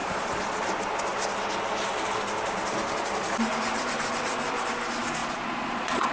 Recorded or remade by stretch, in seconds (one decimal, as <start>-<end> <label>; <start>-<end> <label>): 0.0-0.5 remade; 0.5-5.2 recorded; 5.2-6.1 remade